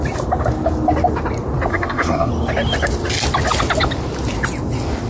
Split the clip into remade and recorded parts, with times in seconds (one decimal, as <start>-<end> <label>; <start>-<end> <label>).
0.0-1.7 recorded; 1.7-2.3 remade; 2.3-5.1 recorded